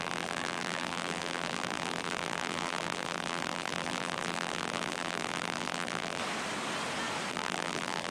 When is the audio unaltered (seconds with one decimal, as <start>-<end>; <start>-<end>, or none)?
6.2-7.3